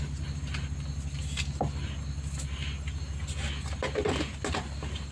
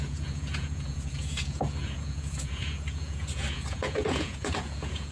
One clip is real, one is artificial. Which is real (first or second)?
first